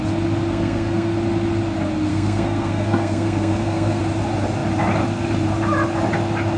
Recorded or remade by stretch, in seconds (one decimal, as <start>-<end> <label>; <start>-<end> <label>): 0.0-0.5 recorded; 0.5-1.1 remade; 1.1-2.1 recorded; 2.1-4.0 remade; 4.0-6.6 recorded